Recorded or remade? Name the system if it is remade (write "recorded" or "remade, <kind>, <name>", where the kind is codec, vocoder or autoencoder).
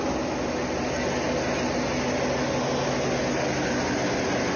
recorded